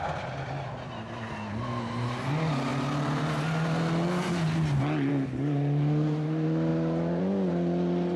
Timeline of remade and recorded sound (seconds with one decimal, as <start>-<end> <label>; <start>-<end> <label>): 0.0-8.2 recorded